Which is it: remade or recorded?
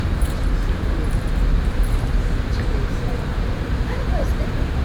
remade